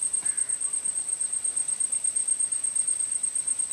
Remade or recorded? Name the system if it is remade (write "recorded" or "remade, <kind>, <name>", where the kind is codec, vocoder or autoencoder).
remade, vocoder, BigVGAN v2